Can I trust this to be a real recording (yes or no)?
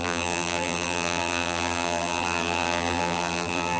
no